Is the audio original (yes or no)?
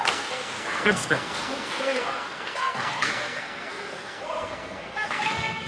no